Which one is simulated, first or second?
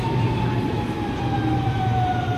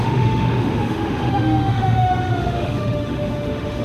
second